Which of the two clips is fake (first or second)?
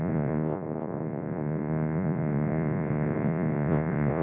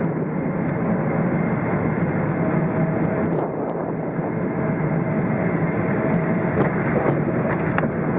first